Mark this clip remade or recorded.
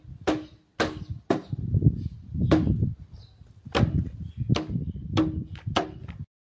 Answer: recorded